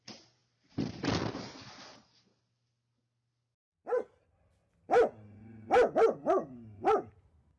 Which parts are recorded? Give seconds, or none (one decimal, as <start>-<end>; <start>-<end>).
0.0-0.4; 1.1-7.6